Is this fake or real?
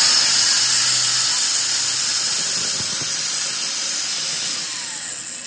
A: real